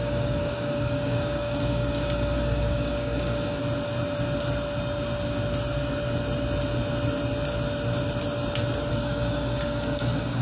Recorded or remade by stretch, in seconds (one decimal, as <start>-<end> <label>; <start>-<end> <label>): 0.0-3.6 remade; 3.6-8.9 recorded; 8.9-10.4 remade